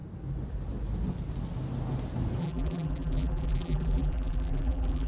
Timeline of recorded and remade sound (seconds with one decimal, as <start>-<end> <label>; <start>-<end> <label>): 0.0-2.4 recorded; 2.4-5.1 remade